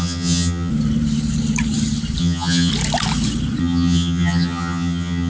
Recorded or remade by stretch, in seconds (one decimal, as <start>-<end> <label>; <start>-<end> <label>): 0.0-0.7 remade; 0.7-2.2 recorded; 2.2-2.7 remade; 2.7-3.6 recorded; 3.6-5.3 remade